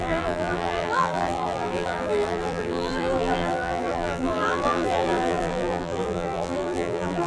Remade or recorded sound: remade